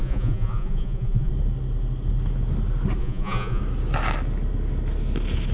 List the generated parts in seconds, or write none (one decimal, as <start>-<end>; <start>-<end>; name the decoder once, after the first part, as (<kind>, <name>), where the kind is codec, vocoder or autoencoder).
0.0-1.3 (vocoder, Vocos); 3.0-3.6